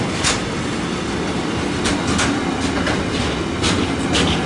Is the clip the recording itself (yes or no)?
yes